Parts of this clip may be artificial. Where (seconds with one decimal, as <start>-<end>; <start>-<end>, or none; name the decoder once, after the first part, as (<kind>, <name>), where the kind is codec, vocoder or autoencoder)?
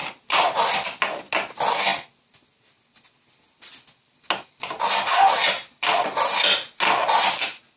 none